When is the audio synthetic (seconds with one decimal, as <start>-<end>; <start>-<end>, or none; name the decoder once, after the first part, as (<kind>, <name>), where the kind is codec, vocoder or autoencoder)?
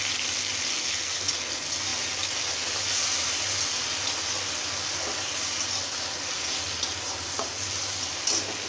0.7-1.3 (codec, SNAC)